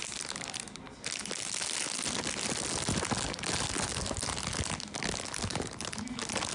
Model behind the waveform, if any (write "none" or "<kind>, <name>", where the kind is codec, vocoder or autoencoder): none